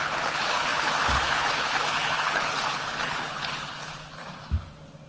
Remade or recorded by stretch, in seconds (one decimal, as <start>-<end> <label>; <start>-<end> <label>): 0.0-4.2 remade; 4.2-5.1 recorded